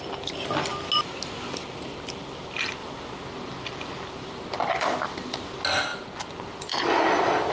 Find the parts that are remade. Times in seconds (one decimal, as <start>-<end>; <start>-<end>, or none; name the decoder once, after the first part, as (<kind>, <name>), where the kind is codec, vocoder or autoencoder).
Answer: 5.9-7.5 (vocoder, BigVGAN v2)